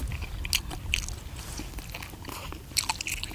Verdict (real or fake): real